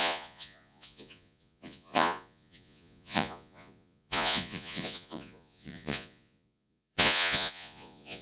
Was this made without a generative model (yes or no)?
no